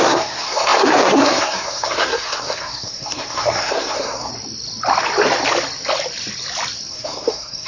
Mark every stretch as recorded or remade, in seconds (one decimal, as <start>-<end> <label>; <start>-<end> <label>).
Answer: 0.0-4.3 remade; 4.3-6.9 recorded; 6.9-7.7 remade